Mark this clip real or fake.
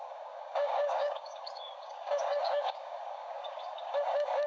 fake